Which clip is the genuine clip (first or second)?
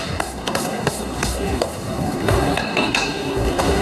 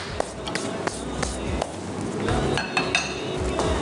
second